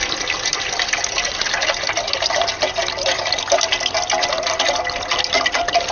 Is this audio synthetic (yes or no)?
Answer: no